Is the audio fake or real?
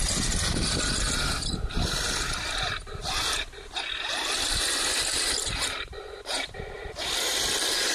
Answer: real